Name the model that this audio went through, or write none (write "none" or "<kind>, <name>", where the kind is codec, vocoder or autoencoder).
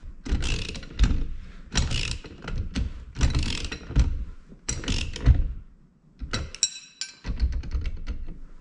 none